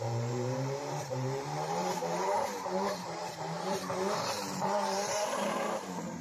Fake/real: fake